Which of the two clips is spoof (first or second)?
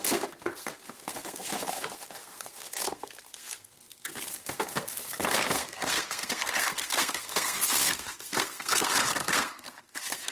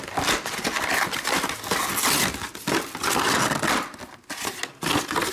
first